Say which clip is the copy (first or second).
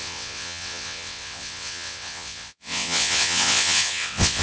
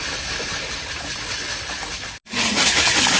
first